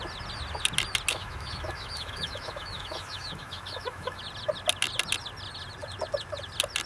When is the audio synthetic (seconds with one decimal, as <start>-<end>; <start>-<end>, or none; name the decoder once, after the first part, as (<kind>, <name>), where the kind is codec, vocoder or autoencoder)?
1.1-4.2 (autoencoder, DAC-VAE)